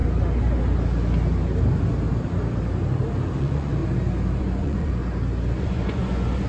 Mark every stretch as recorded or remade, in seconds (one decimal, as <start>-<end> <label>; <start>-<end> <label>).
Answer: 0.0-3.4 recorded; 3.4-3.8 remade; 3.8-4.4 recorded; 4.4-5.0 remade; 5.0-5.6 recorded; 5.6-6.5 remade